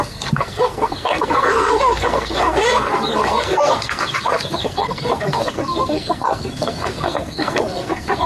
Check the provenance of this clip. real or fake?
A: fake